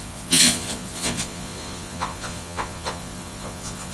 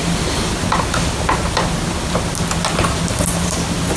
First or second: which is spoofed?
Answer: first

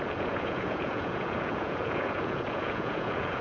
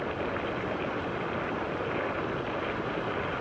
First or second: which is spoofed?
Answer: first